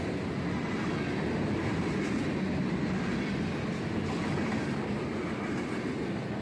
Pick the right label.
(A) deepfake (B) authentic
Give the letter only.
B